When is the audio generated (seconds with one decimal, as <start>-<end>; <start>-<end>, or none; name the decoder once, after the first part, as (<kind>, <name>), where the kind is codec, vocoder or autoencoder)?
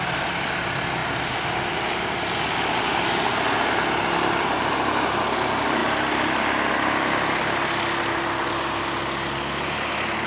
none